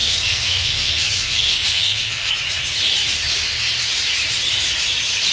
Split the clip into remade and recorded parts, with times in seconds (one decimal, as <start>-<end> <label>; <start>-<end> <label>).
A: 0.0-2.3 remade; 2.3-5.3 recorded